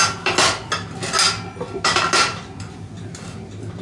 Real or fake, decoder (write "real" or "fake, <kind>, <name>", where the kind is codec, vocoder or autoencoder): real